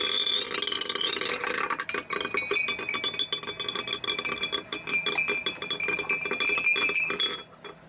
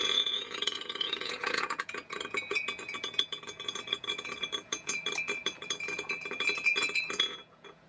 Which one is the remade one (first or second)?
second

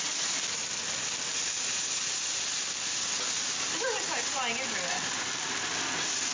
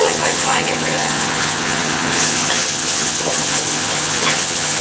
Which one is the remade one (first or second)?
second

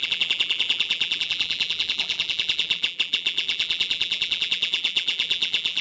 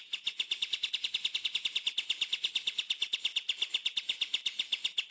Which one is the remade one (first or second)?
first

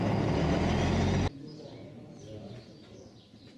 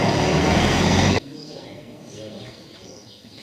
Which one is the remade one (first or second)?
second